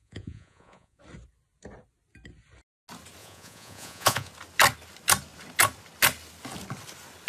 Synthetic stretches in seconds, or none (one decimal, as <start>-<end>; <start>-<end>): 0.0-1.0; 3.2-4.3